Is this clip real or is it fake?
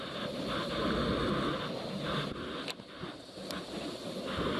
real